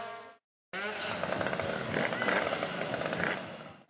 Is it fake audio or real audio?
real